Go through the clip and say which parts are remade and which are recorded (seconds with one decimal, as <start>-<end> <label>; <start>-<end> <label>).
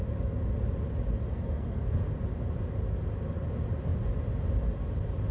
0.0-1.3 recorded; 1.3-2.1 remade; 2.1-5.3 recorded